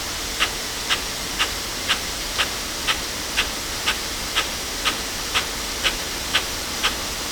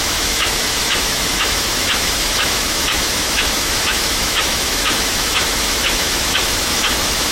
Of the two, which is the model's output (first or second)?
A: second